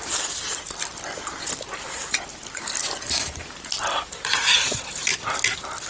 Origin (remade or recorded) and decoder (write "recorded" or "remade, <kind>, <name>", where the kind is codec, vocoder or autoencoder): remade, vocoder, BigVGAN v2